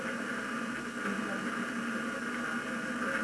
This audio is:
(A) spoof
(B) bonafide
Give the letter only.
B